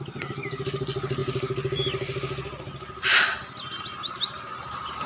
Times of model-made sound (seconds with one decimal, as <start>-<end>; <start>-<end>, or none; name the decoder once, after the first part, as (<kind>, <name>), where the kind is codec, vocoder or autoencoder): none

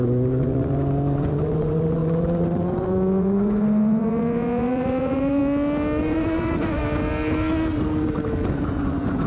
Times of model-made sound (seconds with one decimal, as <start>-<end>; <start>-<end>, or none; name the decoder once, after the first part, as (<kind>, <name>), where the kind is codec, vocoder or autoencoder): 0.0-5.4 (vocoder, Vocos); 6.0-6.8; 8.5-9.3

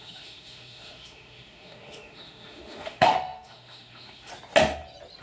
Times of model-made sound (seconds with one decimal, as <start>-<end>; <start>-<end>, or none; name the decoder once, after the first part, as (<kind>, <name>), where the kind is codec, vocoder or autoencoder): 0.0-4.3 (autoencoder, DAC-VAE)

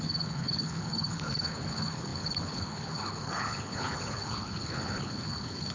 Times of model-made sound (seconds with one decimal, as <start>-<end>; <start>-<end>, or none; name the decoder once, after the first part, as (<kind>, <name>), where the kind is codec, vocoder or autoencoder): 0.0-5.7 (codec, HILCodec)

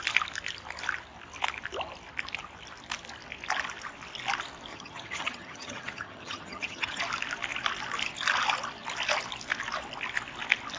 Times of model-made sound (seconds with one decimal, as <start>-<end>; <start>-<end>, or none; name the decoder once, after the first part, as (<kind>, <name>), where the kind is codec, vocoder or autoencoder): 4.7-7.0 (vocoder, HiFi-GAN)

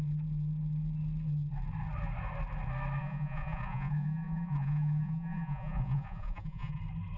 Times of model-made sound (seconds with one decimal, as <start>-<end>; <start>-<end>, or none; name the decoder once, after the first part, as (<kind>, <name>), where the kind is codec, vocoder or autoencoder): 3.0-6.8 (vocoder, Vocos)

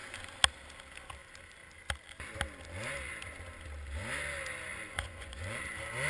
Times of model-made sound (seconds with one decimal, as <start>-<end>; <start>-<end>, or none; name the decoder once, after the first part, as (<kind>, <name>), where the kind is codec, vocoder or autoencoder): 4.7-5.6 (vocoder, Vocos)